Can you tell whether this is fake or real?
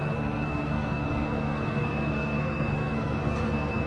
fake